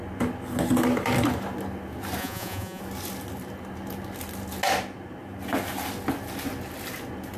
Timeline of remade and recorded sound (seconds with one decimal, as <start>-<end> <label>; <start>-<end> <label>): 0.0-2.2 recorded; 2.2-2.8 remade; 2.8-7.4 recorded

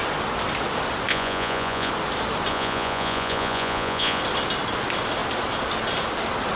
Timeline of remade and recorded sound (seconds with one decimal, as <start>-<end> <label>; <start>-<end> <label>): 0.0-1.1 recorded; 1.1-1.9 remade; 1.9-2.5 recorded; 2.5-4.2 remade; 4.2-6.6 recorded